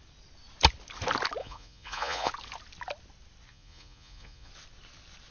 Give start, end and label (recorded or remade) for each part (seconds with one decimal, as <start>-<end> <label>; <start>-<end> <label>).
0.0-1.4 recorded; 1.4-2.3 remade; 2.3-3.5 recorded; 3.5-4.5 remade; 4.5-5.3 recorded